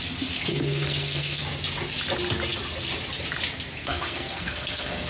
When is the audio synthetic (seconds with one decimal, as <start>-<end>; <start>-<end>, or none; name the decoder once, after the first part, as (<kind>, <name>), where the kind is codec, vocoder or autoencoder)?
0.5-1.4 (codec, SNAC); 3.8-5.1